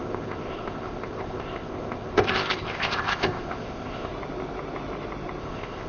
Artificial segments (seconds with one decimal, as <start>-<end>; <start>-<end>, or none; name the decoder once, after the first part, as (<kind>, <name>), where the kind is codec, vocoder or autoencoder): 0.0-4.1 (codec, ZipCodec); 5.4-5.9

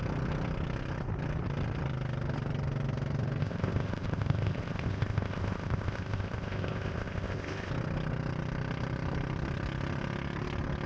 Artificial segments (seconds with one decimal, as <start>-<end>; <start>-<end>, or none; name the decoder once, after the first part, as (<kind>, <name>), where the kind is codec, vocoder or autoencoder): 3.4-7.7 (codec, ZipCodec)

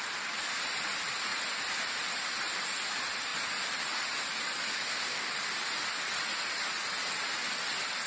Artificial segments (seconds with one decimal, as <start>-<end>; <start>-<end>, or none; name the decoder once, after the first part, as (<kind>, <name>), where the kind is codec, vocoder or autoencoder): 4.7-5.3 (codec, ZipCodec)

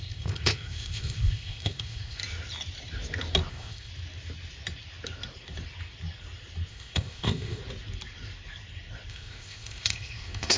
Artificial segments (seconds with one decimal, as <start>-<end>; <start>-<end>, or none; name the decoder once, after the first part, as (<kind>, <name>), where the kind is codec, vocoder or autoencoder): 0.0-2.2 (codec, ZipCodec); 3.5-3.9; 6.7-7.6; 9.1-10.6

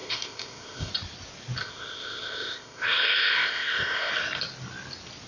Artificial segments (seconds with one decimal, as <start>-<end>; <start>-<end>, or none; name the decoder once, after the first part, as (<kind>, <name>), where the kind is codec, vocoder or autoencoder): 0.0-0.9 (codec, ZipCodec); 1.6-4.1